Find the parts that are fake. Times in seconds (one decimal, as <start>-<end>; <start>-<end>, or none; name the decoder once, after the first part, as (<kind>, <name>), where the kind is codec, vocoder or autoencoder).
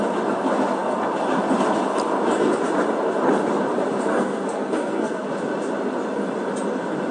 4.1-5.3 (codec, SNAC)